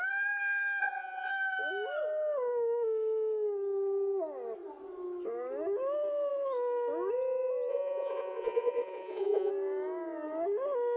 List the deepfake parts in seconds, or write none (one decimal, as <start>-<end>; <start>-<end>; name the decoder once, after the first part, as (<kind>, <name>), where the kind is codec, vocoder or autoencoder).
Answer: 0.8-1.3 (vocoder, Vocos); 7.7-9.5